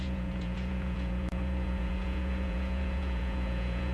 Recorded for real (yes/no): no